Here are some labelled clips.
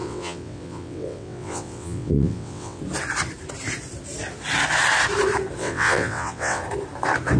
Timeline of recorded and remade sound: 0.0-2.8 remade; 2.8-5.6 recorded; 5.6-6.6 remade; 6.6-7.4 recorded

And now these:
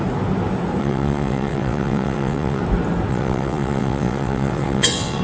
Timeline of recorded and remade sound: 0.0-0.8 recorded; 0.8-2.6 remade; 2.6-3.1 recorded; 3.1-5.2 remade

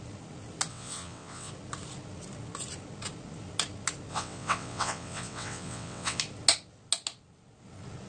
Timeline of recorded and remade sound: 0.0-0.7 recorded; 0.7-1.5 remade; 1.5-4.1 recorded; 4.1-6.2 remade; 6.2-8.1 recorded

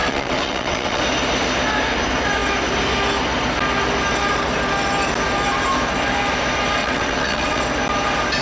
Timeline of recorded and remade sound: 0.0-1.0 remade; 1.0-6.8 recorded; 6.8-7.6 remade; 7.6-8.4 recorded

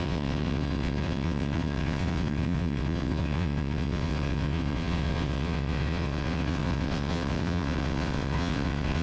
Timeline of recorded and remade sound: 0.0-9.0 remade

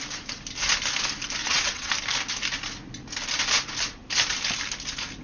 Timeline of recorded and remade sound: 0.0-1.4 recorded; 1.4-1.9 remade; 1.9-5.2 recorded

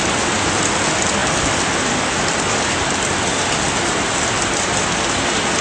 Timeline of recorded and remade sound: 0.0-5.6 recorded

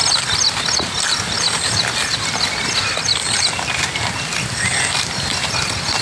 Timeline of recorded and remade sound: 0.0-6.0 recorded